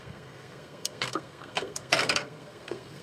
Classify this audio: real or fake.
fake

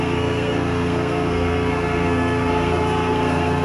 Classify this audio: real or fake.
fake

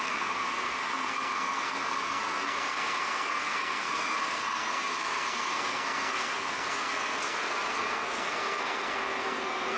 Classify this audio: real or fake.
fake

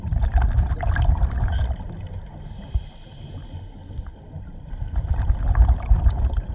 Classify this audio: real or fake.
real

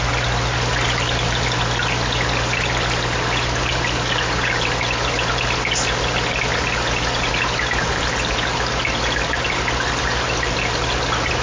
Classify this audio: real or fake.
real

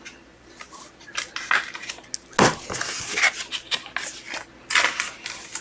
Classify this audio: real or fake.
real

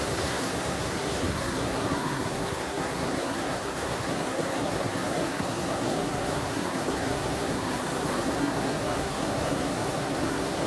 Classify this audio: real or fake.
fake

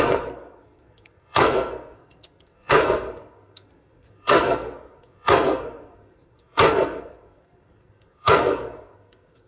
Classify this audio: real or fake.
fake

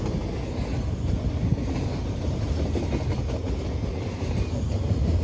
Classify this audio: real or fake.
real